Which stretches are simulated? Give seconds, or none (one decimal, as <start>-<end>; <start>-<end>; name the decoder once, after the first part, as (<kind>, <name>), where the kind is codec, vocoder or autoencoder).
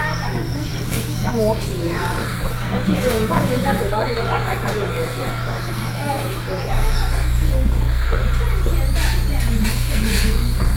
0.0-8.2 (codec, SNAC); 9.7-10.8